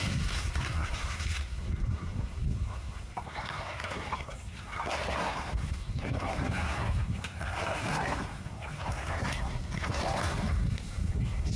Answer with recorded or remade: remade